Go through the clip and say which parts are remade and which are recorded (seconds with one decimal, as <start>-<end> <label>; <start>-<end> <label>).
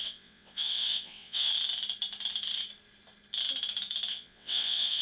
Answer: 0.0-1.5 remade; 1.5-4.1 recorded; 4.1-5.0 remade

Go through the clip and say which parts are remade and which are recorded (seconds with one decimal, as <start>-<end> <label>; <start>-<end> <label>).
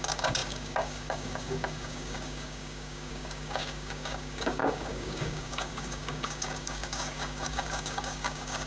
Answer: 0.0-8.7 remade